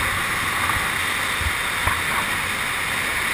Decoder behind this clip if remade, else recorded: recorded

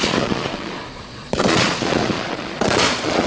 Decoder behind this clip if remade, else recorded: remade, vocoder, Vocos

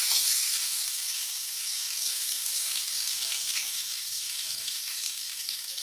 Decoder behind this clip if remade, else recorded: remade, codec, DAC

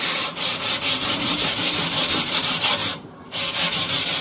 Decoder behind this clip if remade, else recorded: remade, vocoder, BigVGAN v2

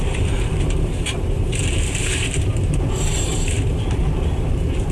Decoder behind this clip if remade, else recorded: remade, vocoder, BigVGAN v2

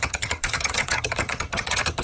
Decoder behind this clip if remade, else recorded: remade, vocoder, HiFi-GAN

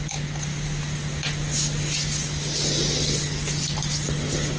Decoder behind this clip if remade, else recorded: recorded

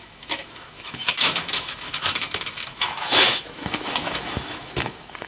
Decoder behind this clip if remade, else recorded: remade, autoencoder, DAC-VAE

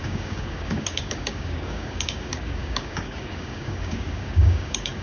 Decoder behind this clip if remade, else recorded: remade, codec, DAC